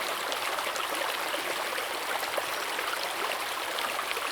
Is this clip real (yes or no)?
no